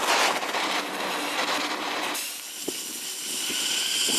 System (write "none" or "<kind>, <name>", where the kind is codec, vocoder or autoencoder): none